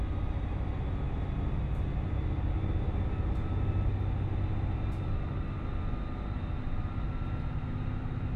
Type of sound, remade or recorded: recorded